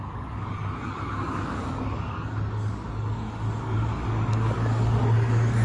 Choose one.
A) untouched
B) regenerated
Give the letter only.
B